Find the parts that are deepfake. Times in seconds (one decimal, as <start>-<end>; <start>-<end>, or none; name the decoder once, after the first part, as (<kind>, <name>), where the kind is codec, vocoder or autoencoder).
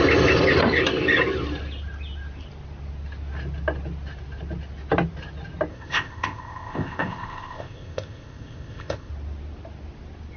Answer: 5.7-9.1 (codec, ZipCodec)